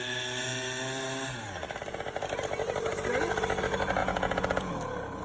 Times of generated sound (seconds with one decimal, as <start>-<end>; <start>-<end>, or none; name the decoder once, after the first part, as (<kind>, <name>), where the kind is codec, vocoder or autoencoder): 4.0-4.7 (vocoder, Vocos)

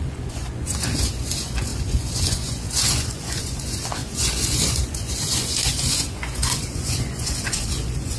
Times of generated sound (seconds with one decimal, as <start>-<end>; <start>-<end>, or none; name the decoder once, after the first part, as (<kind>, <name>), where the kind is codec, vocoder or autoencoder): 0.0-8.2 (vocoder, Vocos)

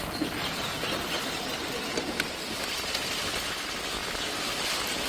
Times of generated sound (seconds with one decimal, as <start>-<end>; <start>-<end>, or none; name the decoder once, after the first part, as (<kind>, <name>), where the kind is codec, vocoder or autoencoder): 0.0-4.0 (vocoder, BigVGAN v2)

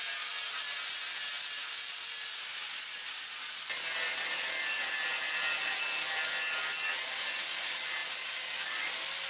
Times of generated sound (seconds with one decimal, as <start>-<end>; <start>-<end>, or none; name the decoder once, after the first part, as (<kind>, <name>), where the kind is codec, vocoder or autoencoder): none

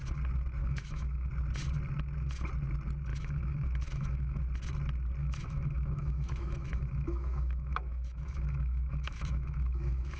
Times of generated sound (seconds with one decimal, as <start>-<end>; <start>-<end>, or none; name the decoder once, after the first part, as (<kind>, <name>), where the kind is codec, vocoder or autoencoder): 0.6-1.3 (autoencoder, DAC-VAE); 3.1-4.4; 5.2-10.2

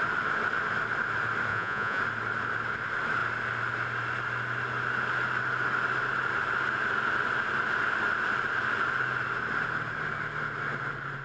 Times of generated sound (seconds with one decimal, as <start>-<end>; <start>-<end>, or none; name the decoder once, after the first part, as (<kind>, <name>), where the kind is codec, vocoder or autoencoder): 1.5-2.0 (vocoder, Vocos)

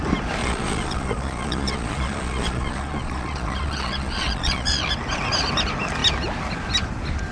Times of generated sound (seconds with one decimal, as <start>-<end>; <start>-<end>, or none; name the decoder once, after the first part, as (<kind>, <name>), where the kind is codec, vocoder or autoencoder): 0.4-4.8 (vocoder, Vocos)

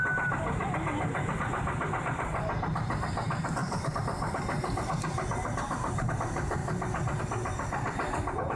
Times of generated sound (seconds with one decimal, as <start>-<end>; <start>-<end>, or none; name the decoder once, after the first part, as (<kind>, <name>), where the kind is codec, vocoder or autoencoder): none